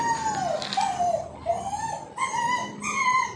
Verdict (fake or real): real